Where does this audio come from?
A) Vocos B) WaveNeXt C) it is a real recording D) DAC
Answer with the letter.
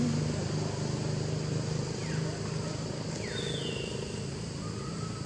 C